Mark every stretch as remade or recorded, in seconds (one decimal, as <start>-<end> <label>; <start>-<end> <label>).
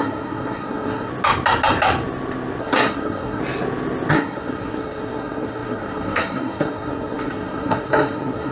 0.0-1.1 remade; 1.1-2.6 recorded; 2.6-3.4 remade; 3.4-4.1 recorded; 4.1-8.5 remade